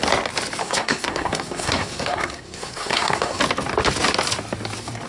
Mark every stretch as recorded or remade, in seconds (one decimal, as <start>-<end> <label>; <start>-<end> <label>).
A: 0.0-0.6 recorded; 0.6-3.4 remade; 3.4-5.1 recorded